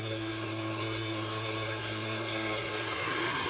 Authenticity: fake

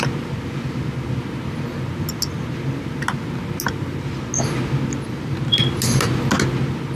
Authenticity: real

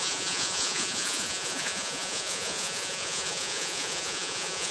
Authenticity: fake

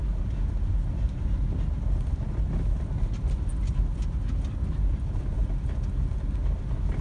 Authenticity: real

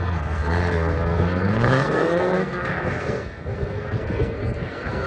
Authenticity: fake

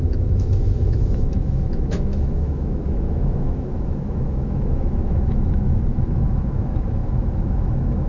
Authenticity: fake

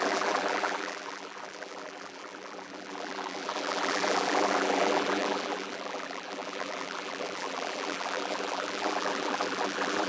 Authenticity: fake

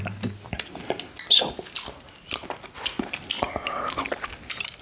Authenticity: real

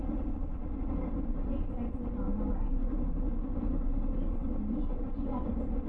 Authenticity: real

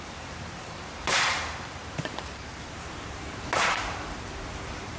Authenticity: fake